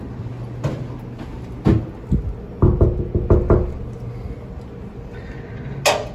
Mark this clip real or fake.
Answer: real